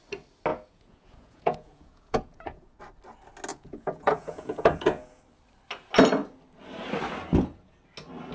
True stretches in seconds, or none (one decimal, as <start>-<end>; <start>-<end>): 0.0-0.5; 2.8-3.5; 5.2-8.3